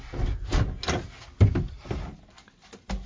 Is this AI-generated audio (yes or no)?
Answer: no